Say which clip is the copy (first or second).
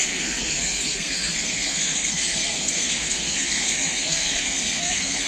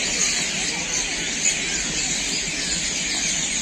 first